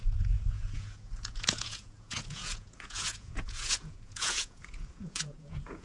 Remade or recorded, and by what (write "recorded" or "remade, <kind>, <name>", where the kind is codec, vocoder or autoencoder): remade, vocoder, Vocos